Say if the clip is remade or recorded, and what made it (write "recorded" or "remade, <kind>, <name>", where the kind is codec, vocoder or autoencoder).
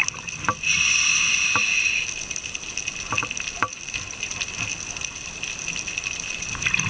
recorded